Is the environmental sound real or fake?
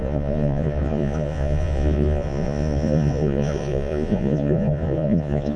fake